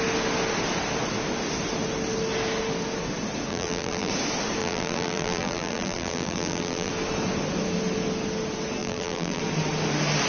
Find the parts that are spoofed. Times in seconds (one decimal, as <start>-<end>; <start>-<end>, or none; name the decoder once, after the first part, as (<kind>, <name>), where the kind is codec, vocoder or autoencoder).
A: 3.5-4.1 (vocoder, BigVGAN v2); 4.6-6.9; 8.8-9.4